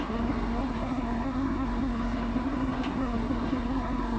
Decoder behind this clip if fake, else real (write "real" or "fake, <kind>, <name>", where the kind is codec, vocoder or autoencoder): fake, codec, SNAC